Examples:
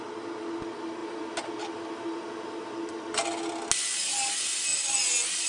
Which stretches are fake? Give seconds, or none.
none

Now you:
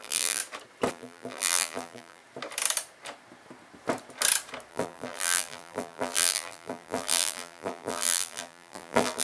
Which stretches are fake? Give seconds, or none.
0.0-0.4 (vocoder, BigVGAN v2); 0.9-2.2; 4.7-9.2

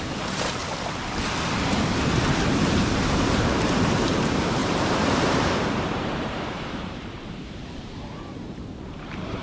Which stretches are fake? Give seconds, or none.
0.0-0.6 (vocoder, BigVGAN v2); 1.8-9.4

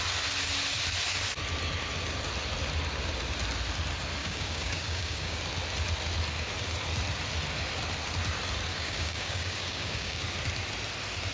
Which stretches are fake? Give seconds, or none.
4.2-5.4 (codec, DAC); 8.7-10.2

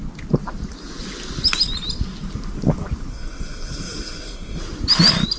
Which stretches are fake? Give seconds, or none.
3.1-4.6 (codec, SNAC)

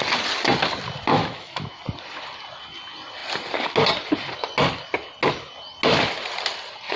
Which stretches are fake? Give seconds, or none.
1.1-1.8 (autoencoder, DAC-VAE)